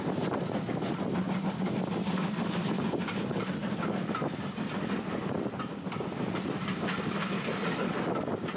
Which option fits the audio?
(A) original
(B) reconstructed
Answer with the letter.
A